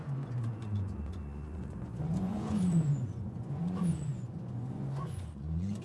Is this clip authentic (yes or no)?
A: no